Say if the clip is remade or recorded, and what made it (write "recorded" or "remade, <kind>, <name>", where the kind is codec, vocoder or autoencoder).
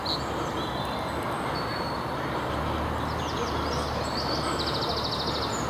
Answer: recorded